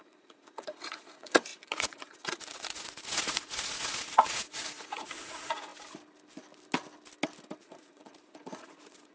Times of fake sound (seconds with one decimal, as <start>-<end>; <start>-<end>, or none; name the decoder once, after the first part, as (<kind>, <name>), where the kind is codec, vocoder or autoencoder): 0.0-5.7 (vocoder, Vocos); 7.6-9.1